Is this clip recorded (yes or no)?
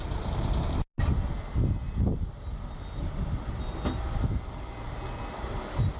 yes